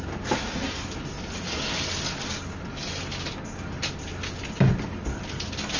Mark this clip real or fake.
real